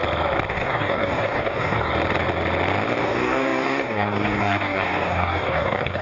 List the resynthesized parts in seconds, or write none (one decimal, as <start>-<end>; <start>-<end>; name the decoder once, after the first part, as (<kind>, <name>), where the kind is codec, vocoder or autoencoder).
0.5-1.9 (codec, DAC); 3.0-6.0